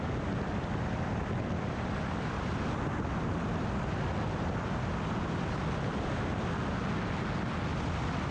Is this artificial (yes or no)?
no